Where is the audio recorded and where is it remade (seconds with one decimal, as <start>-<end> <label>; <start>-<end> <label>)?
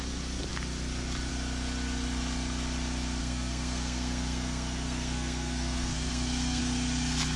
0.0-3.2 recorded; 3.2-6.6 remade; 6.6-7.4 recorded